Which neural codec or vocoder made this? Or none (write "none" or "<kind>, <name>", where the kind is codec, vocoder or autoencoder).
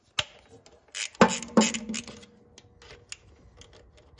none